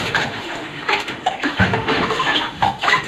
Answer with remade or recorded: remade